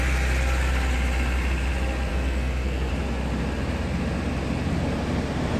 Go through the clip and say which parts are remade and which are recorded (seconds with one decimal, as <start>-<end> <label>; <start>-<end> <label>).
0.0-2.1 recorded; 2.1-2.9 remade; 2.9-5.6 recorded